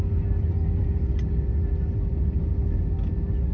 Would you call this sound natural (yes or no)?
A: yes